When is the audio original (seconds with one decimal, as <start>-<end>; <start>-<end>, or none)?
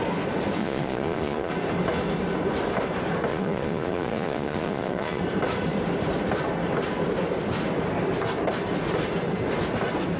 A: 0.0-0.6; 1.5-3.3; 5.2-10.2